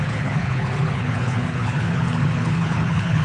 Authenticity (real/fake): fake